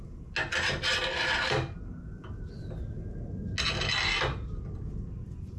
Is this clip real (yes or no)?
yes